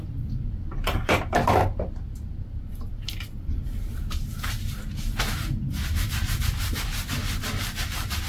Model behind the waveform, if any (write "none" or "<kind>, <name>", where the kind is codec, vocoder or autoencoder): vocoder, BigVGAN v2